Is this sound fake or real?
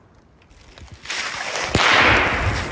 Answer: real